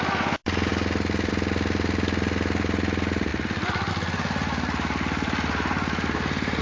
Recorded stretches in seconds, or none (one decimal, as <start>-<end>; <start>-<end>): 0.0-6.6